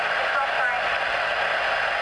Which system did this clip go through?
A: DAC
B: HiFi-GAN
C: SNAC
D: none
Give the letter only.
D